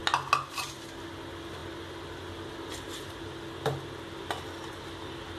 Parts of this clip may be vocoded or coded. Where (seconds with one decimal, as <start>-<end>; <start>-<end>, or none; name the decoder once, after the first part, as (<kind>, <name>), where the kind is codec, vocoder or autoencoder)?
none